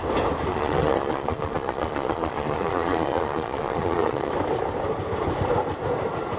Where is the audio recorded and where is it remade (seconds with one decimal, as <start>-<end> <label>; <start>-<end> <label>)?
0.0-0.5 recorded; 0.5-4.3 remade; 4.3-6.4 recorded